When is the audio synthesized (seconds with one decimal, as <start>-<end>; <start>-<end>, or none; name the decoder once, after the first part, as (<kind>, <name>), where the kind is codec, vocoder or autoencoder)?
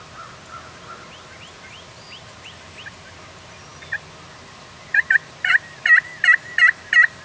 none